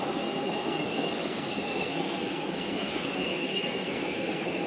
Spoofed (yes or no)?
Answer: yes